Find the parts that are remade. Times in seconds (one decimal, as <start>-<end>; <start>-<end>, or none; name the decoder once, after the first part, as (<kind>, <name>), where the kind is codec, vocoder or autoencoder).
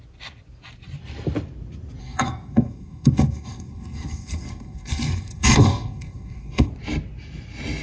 2.0-6.7 (codec, SNAC)